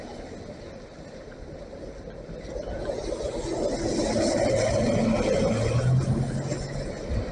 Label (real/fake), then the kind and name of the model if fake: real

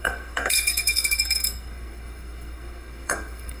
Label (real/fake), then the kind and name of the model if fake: fake, codec, SNAC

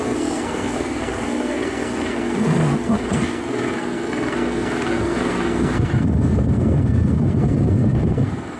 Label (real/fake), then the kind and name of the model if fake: fake, codec, SNAC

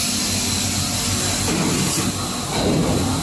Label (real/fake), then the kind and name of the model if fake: real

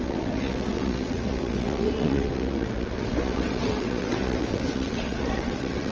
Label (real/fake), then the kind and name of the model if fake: fake, vocoder, WaveNeXt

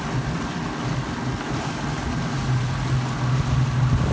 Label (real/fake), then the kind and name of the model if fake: real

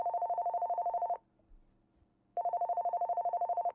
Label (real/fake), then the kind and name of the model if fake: real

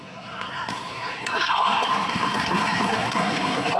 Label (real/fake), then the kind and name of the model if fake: fake, codec, SNAC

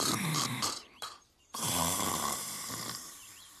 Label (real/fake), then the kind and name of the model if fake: fake, vocoder, BigVGAN v2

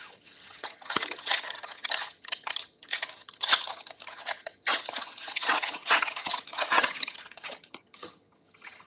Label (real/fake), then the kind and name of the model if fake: fake, vocoder, HiFi-GAN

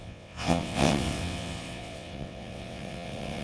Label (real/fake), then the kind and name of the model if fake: fake, vocoder, WaveNeXt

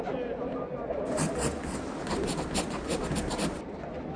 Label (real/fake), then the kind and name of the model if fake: real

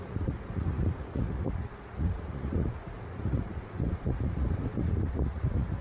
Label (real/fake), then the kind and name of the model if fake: fake, vocoder, Vocos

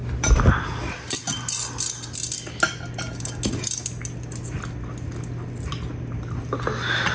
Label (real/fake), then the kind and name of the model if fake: real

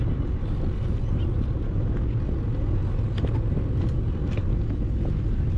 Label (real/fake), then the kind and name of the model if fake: real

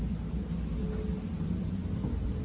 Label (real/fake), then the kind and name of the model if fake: real